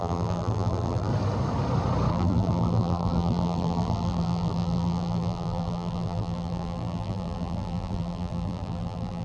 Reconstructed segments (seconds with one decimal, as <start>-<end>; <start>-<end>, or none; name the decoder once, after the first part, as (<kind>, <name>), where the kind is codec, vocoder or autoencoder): 0.0-1.1 (vocoder, BigVGAN v2); 2.1-9.2